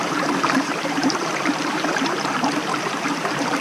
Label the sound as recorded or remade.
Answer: remade